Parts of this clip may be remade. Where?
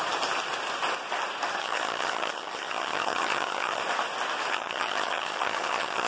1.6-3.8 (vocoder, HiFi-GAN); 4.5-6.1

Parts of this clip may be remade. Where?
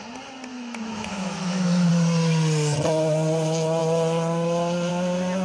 0.5-1.9 (autoencoder, DAC-VAE)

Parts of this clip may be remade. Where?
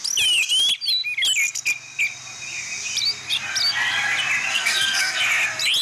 4.5-5.2 (codec, SNAC)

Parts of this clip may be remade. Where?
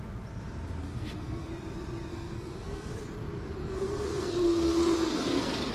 0.8-1.5 (codec, SNAC); 2.1-2.9; 3.6-5.7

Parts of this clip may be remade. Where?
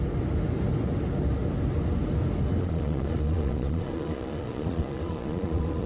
2.6-5.9 (vocoder, Vocos)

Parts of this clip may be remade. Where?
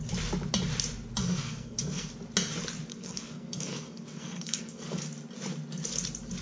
1.2-2.1 (codec, SNAC); 2.9-5.0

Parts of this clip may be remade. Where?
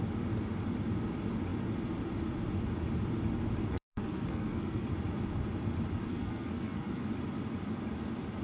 3.6-4.9 (codec, SNAC); 6.1-7.0